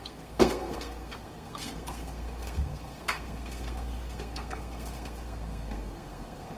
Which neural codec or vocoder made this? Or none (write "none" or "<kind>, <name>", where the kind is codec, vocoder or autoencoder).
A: codec, SNAC